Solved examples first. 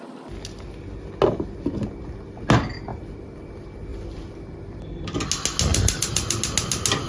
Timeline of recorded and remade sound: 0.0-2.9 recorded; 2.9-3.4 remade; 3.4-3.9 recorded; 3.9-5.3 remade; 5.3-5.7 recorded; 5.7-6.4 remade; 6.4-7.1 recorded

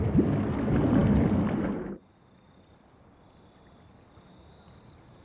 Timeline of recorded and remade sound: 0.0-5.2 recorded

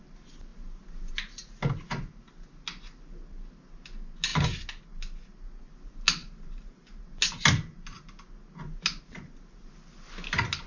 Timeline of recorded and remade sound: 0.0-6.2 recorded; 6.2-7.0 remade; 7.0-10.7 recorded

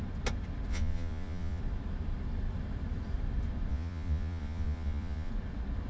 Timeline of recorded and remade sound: 0.0-0.7 recorded; 0.7-1.6 remade; 1.6-3.7 recorded; 3.7-5.3 remade; 5.3-5.9 recorded